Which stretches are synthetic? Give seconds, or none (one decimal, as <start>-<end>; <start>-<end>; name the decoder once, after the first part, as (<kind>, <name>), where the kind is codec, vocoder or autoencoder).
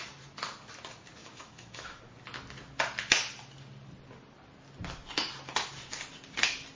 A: 1.2-2.0 (autoencoder, DAC-VAE)